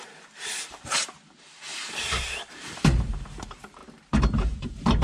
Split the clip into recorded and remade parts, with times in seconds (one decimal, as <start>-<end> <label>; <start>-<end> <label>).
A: 0.0-5.0 remade